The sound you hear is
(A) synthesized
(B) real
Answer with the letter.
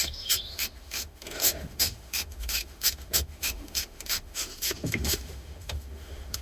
A